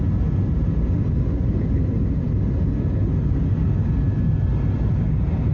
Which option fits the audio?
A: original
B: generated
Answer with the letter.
A